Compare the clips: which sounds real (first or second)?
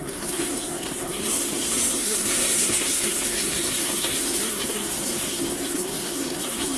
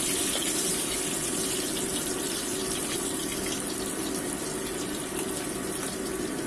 second